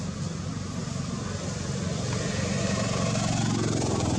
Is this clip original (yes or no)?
yes